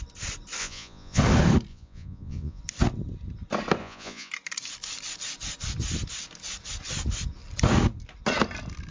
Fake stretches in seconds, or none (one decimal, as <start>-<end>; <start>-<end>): 0.6-1.2; 1.7-2.6; 3.8-4.3